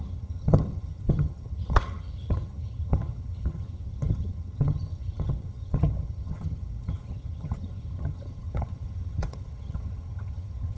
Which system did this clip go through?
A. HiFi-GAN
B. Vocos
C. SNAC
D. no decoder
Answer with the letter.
A